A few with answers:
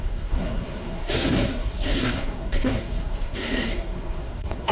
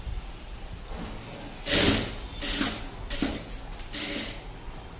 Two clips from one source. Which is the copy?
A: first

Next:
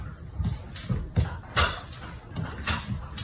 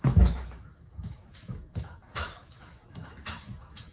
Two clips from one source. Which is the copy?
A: second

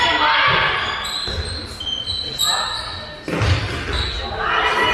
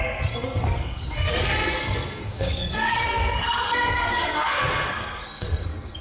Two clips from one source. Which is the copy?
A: second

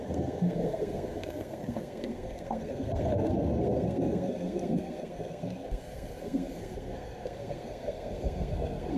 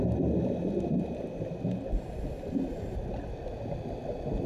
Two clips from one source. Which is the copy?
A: first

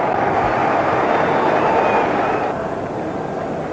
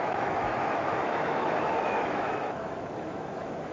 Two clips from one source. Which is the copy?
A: second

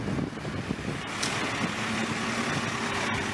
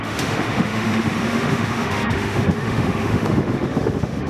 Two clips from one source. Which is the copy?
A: second